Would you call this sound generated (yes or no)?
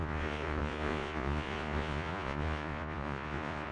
yes